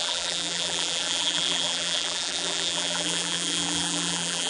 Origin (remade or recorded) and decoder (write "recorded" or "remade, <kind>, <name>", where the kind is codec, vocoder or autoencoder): remade, vocoder, BigVGAN v2